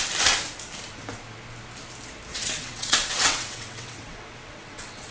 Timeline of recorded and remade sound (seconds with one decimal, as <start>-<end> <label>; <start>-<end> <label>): 0.0-2.3 recorded; 2.3-5.1 remade